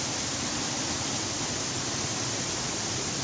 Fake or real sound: real